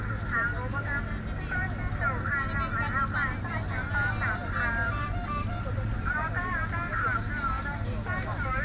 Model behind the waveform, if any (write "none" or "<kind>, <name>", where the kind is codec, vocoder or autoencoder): none